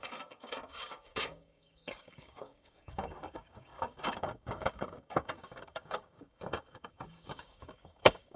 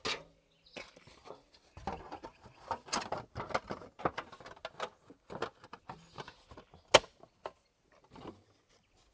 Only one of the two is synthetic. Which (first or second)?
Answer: first